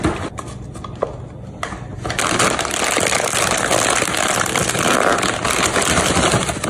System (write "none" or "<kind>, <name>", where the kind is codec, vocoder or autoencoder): none